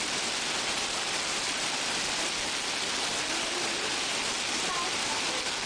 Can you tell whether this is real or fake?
real